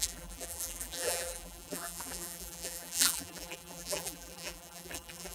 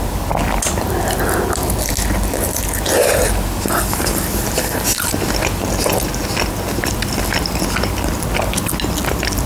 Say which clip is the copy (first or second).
first